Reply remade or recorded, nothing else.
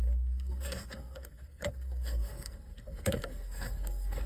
remade